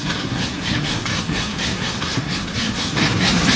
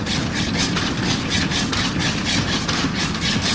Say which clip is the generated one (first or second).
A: first